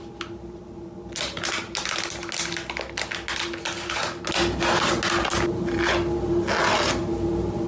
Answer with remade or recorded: recorded